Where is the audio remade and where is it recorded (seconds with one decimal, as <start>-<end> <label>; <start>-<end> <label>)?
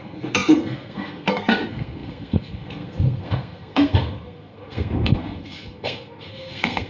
0.0-6.9 remade